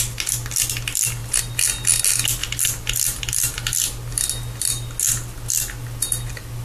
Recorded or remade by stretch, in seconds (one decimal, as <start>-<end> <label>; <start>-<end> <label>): 0.0-6.6 recorded